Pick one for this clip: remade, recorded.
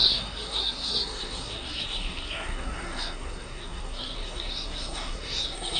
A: remade